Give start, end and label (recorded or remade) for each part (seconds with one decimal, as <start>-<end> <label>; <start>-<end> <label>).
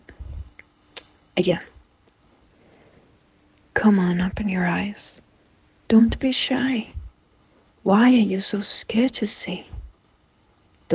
0.0-2.5 remade; 2.5-6.0 recorded; 6.0-10.9 remade